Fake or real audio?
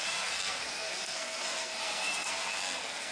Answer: fake